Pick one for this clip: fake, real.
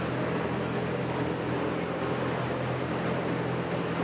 real